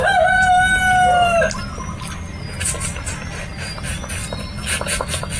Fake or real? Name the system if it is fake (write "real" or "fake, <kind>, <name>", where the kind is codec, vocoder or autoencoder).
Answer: real